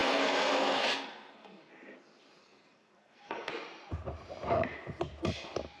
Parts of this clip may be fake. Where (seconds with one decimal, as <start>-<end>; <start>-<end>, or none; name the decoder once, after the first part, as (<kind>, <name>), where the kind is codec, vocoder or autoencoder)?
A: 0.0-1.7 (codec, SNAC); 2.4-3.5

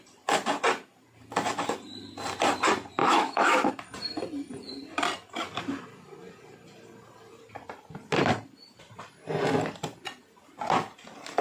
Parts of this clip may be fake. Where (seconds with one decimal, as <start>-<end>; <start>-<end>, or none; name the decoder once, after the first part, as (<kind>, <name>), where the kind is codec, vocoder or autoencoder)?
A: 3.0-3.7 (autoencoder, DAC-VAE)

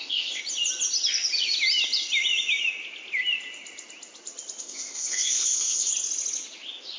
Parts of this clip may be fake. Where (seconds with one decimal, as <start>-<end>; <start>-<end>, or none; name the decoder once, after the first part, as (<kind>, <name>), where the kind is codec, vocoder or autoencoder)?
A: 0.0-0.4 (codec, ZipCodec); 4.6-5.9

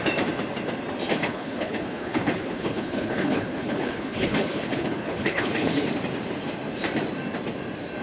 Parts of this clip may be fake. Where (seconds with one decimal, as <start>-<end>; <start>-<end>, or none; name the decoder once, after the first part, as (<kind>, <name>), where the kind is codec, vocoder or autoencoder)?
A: 1.1-5.9 (codec, HILCodec)

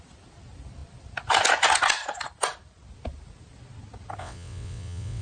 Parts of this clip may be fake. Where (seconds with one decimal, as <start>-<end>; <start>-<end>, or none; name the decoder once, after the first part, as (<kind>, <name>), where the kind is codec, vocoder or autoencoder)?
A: 4.2-5.2 (vocoder, WaveNeXt)

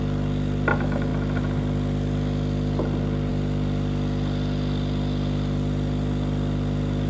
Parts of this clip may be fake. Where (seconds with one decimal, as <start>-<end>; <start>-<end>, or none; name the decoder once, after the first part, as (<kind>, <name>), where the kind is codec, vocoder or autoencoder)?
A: none